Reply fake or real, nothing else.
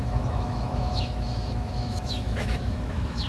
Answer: fake